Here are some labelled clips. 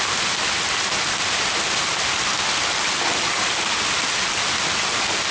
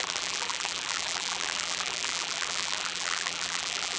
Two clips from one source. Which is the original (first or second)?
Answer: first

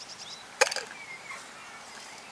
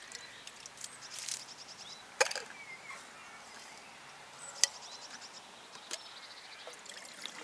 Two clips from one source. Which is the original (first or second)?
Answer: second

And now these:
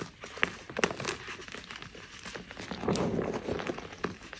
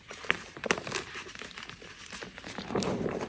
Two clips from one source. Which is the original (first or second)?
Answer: first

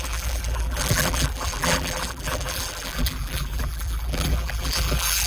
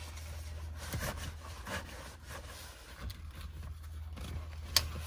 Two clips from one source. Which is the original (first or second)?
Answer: second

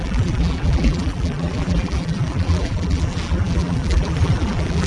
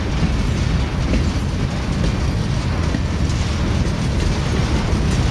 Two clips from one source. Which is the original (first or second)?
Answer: second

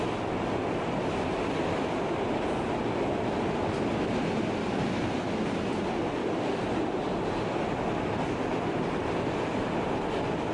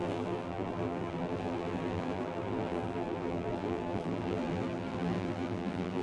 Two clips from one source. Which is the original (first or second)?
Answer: first